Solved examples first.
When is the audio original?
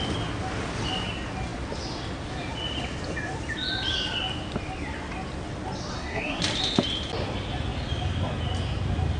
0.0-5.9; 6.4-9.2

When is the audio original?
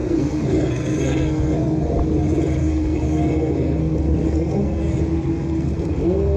1.9-2.6; 4.8-5.3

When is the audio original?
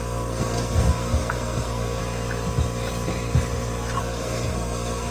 2.0-4.0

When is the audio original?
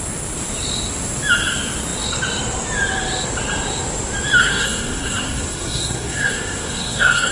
0.0-4.4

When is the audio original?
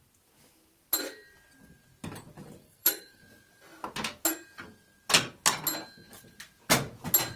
0.0-2.6; 3.2-7.4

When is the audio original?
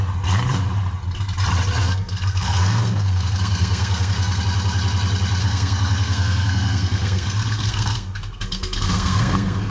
0.0-1.8; 4.4-5.4